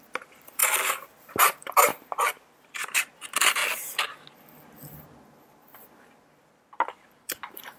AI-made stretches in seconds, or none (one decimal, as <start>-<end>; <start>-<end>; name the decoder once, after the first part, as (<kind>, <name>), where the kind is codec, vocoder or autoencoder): 0.0-0.6 (vocoder, BigVGAN v2); 1.3-1.9; 2.8-3.6; 7.0-7.8